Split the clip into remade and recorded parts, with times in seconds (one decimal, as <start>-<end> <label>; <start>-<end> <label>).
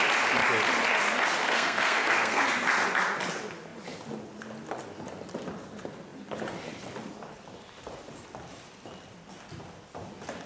0.0-1.4 recorded; 1.4-2.4 remade; 2.4-10.5 recorded